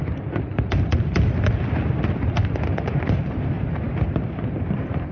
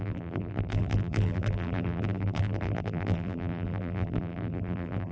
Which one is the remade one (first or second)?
second